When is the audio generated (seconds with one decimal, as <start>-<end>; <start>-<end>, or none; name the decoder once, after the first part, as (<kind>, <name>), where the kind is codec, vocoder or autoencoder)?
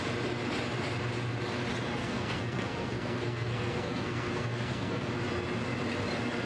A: 2.0-5.1 (codec, SNAC)